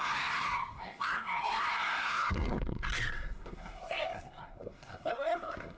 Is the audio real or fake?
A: fake